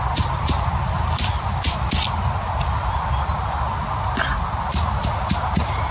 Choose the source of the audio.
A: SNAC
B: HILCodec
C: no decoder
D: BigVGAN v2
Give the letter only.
C